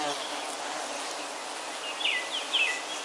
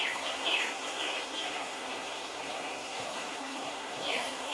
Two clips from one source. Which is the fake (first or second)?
second